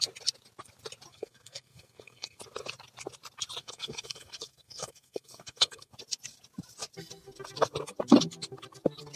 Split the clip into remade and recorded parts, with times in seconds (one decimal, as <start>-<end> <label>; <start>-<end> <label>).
0.0-1.1 recorded; 1.1-2.4 remade; 2.4-3.6 recorded; 3.6-5.9 remade; 5.9-9.2 recorded